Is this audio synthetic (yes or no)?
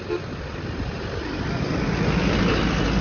no